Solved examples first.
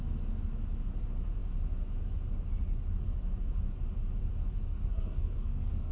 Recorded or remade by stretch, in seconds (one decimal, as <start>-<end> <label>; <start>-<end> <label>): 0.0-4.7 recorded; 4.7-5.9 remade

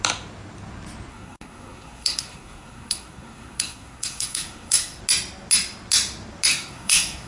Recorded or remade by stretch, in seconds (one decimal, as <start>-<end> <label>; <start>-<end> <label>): 0.0-1.1 recorded; 1.1-5.0 remade; 5.0-6.5 recorded; 6.5-7.3 remade

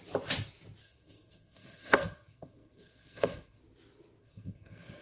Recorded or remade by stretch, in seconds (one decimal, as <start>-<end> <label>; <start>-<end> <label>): 0.0-0.8 recorded; 0.8-3.6 remade; 3.6-4.2 recorded; 4.2-5.0 remade

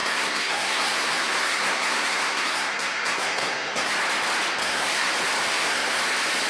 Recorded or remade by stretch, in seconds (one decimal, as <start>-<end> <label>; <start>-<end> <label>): 0.0-3.9 remade; 3.9-4.6 recorded; 4.6-5.1 remade; 5.1-5.5 recorded; 5.5-6.0 remade; 6.0-6.5 recorded

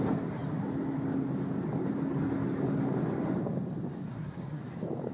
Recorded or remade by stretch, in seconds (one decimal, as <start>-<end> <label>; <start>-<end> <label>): 0.0-4.1 recorded; 4.1-4.6 remade; 4.6-5.1 recorded

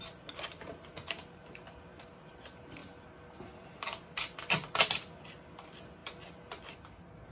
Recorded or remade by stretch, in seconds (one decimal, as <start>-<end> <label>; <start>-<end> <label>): 0.0-7.3 recorded